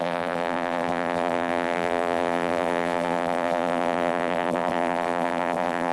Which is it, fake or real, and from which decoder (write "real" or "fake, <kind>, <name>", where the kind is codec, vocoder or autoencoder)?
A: fake, vocoder, BigVGAN v2